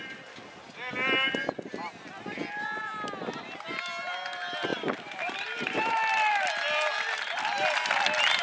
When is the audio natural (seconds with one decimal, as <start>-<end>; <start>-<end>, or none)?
0.0-4.7; 5.9-8.4